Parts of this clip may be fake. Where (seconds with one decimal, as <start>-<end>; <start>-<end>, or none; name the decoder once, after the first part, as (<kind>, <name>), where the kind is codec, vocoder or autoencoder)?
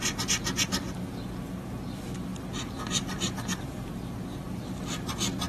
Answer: none